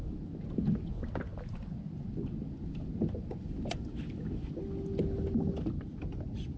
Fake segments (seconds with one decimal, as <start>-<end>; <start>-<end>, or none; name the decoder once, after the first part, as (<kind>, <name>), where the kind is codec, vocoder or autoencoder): none